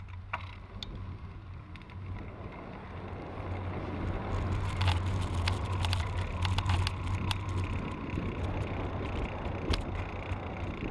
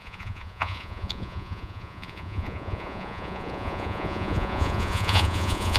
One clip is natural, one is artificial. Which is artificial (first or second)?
second